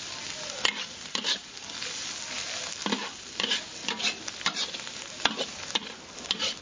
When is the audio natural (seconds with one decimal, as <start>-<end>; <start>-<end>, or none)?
0.0-6.6